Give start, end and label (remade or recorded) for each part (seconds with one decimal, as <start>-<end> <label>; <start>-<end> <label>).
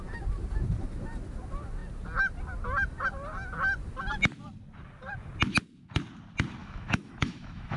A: 0.0-6.6 recorded; 6.6-7.8 remade